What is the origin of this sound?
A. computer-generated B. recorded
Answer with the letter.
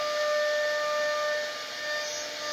B